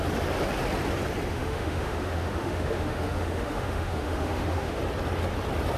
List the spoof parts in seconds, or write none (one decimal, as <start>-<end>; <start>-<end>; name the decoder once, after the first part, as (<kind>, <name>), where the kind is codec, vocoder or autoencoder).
1.3-4.8 (autoencoder, DAC-VAE)